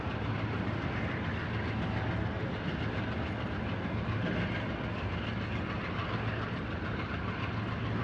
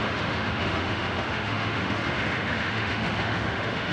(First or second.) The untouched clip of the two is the first